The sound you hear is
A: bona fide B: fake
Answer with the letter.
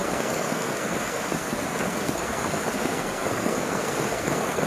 B